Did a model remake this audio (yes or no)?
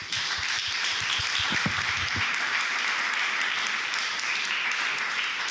yes